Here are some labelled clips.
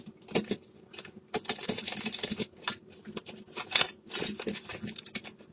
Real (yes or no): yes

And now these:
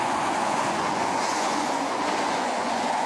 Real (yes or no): no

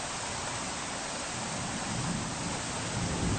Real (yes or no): yes